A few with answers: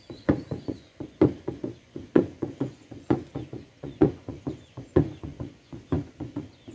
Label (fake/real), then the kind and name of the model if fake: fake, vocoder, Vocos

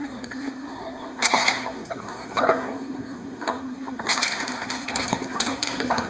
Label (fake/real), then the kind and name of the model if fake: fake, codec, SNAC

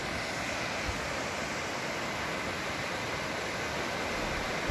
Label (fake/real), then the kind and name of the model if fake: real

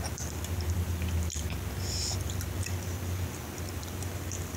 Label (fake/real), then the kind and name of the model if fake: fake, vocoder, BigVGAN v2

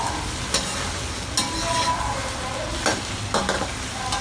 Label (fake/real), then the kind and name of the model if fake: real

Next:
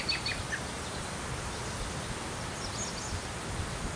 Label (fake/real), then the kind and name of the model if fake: real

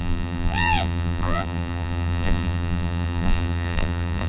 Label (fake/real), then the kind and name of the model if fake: fake, vocoder, BigVGAN v2